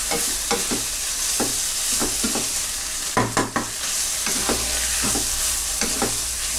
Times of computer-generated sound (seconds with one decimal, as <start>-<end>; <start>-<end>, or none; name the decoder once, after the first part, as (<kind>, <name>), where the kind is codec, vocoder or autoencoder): none